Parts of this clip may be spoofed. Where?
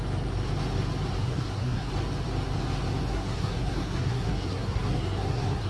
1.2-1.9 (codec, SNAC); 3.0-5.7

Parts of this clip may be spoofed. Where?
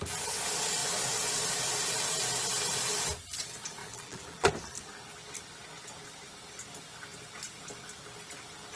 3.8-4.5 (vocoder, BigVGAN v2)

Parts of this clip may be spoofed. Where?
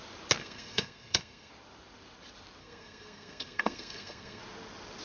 0.4-1.5 (codec, SNAC); 2.6-4.4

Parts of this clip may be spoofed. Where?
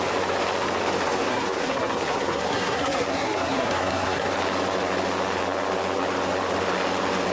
1.3-4.3 (codec, SNAC)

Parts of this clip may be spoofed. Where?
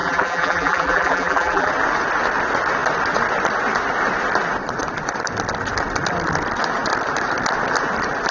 0.0-1.7 (vocoder, BigVGAN v2)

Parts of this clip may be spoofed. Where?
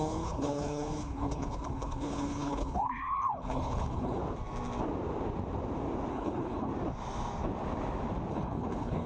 0.0-4.2 (codec, HILCodec); 6.1-6.7; 8.3-9.1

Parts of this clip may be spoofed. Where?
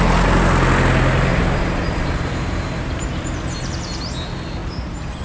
1.3-3.7 (vocoder, BigVGAN v2); 4.6-5.2